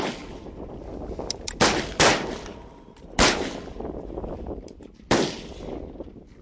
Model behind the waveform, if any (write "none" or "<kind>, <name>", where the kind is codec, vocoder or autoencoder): none